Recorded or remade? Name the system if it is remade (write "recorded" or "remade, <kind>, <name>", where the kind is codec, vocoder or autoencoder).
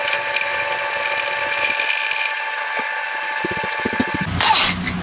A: recorded